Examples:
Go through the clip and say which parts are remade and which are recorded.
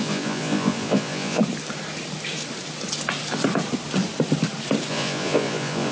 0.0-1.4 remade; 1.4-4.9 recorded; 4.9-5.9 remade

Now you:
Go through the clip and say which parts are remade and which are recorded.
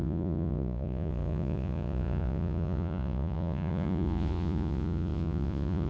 0.0-5.9 remade